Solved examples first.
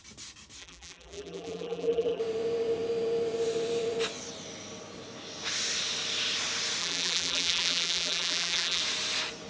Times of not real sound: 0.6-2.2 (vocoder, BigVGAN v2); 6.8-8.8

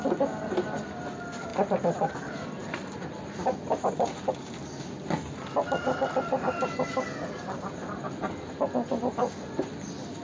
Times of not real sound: 1.5-2.2 (vocoder, BigVGAN v2); 2.6-4.2

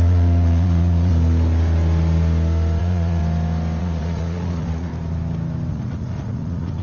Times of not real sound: 0.0-1.1 (vocoder, Vocos); 2.8-3.2; 3.8-4.9; 5.7-6.8

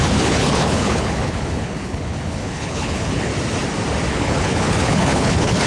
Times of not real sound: 0.0-3.3 (codec, HILCodec); 4.1-5.7